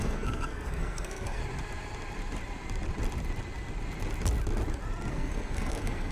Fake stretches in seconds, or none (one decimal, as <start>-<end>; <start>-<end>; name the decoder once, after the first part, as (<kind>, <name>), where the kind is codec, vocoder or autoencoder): 0.0-1.4 (codec, SNAC); 5.1-6.1